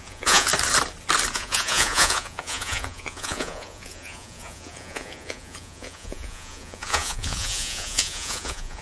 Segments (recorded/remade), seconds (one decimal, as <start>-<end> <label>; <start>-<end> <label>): 0.0-0.5 remade; 0.5-1.3 recorded; 1.3-8.8 remade